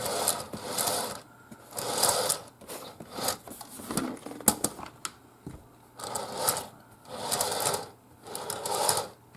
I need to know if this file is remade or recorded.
recorded